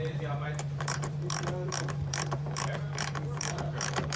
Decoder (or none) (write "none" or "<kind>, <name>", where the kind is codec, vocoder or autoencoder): vocoder, BigVGAN v2